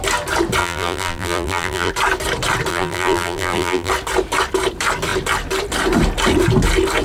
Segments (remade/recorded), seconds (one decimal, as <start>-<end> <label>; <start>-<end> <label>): 0.0-0.6 recorded; 0.6-1.9 remade; 1.9-2.7 recorded; 2.7-3.9 remade; 3.9-7.0 recorded